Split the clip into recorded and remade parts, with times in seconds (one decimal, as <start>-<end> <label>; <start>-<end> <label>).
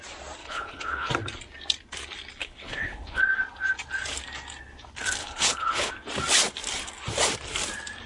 0.0-0.4 recorded; 0.4-1.1 remade; 1.1-2.4 recorded; 2.4-3.2 remade; 3.2-5.2 recorded; 5.2-5.9 remade; 5.9-8.1 recorded